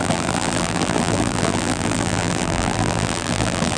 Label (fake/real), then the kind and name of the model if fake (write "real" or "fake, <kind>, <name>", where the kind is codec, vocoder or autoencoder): fake, vocoder, BigVGAN v2